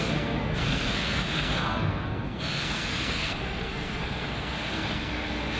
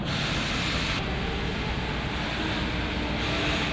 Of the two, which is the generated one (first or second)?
first